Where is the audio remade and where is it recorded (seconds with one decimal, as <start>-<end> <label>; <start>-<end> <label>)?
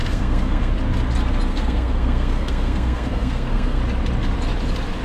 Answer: 0.0-0.7 remade; 0.7-1.5 recorded; 1.5-3.8 remade; 3.8-5.0 recorded